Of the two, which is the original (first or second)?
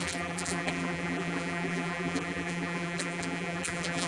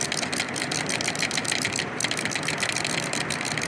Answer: second